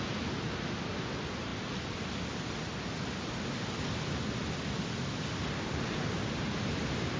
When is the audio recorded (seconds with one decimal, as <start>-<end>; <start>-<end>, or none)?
0.0-7.2